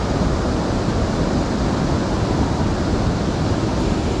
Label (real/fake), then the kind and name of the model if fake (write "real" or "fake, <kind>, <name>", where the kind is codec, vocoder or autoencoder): real